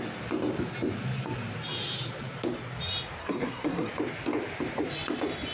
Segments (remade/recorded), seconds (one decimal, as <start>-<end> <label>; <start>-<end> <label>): 0.0-3.2 recorded; 3.2-3.9 remade; 3.9-5.5 recorded